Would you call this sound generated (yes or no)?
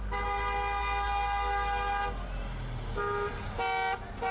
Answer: no